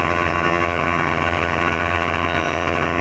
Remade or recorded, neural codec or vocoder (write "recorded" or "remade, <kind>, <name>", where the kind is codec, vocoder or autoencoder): remade, vocoder, HiFi-GAN